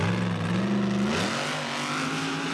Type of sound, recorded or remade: recorded